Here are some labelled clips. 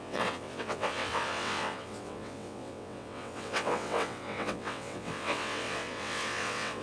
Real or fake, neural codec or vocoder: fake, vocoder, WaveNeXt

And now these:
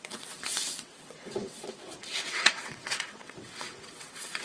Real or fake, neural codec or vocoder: fake, vocoder, WaveNeXt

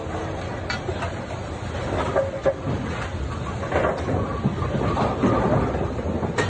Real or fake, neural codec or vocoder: real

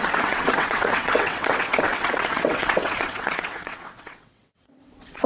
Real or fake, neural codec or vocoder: fake, vocoder, WaveNeXt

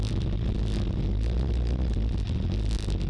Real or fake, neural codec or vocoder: real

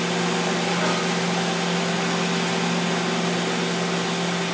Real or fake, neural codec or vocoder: real